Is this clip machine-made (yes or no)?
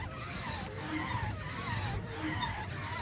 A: yes